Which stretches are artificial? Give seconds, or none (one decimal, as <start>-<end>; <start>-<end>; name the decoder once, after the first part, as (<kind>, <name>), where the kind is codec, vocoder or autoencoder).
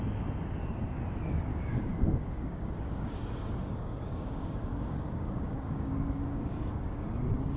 1.5-3.2 (codec, DAC); 3.6-7.1